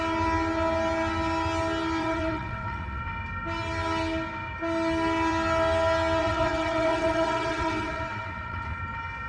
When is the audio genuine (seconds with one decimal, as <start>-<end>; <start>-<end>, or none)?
0.0-2.0; 3.0-6.2; 8.8-9.3